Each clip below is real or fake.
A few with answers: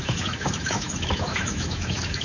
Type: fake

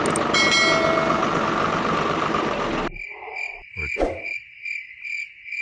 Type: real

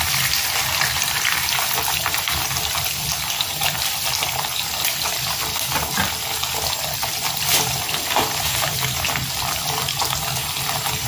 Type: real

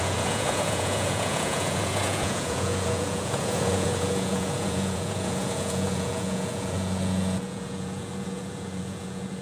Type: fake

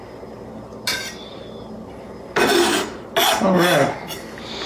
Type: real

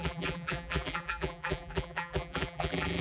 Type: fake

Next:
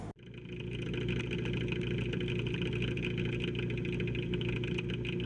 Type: real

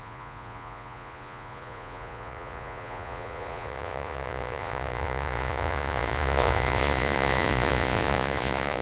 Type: fake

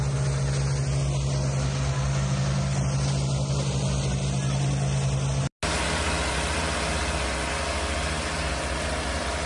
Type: real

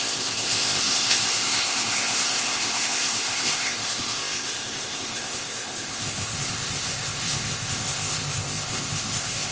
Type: fake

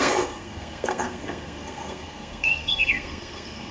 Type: fake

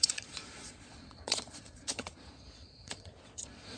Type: fake